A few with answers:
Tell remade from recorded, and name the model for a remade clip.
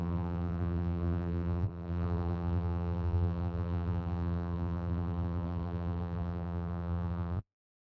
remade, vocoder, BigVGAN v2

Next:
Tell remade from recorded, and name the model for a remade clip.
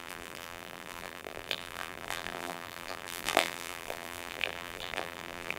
remade, vocoder, BigVGAN v2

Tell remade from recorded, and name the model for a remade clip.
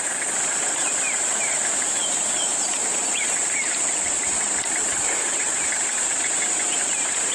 remade, vocoder, BigVGAN v2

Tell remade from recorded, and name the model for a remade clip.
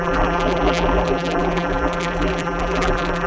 remade, vocoder, BigVGAN v2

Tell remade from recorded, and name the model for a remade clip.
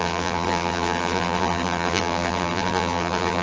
remade, vocoder, BigVGAN v2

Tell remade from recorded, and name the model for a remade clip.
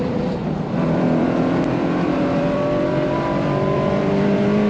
remade, vocoder, BigVGAN v2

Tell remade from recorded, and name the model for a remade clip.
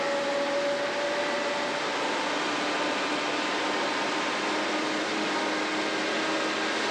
recorded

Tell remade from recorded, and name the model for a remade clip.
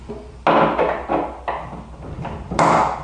recorded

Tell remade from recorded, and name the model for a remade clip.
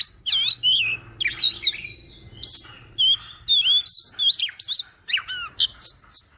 recorded